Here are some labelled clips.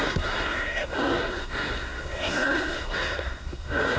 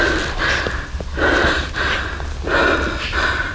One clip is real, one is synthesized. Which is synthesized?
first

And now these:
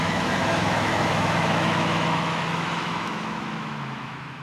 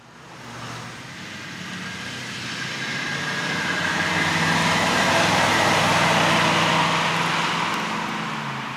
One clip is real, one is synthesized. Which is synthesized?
first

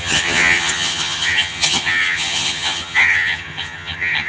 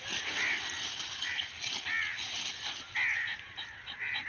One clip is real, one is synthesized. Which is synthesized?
first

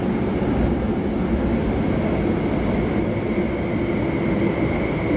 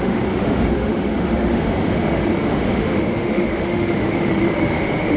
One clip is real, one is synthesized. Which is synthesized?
second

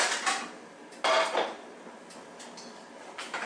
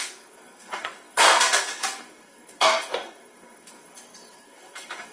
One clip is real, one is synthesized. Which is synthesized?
second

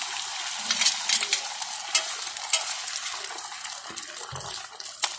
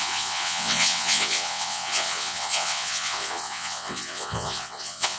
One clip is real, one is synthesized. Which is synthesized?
second